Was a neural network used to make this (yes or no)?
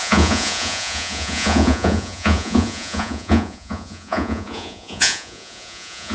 yes